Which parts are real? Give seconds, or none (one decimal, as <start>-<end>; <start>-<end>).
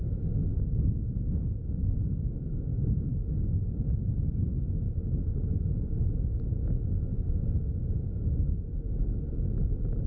0.0-0.5; 2.3-3.1; 3.9-7.1; 7.8-10.1